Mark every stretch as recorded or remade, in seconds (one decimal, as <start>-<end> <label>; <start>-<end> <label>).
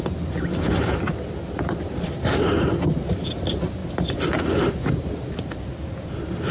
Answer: 0.0-6.5 recorded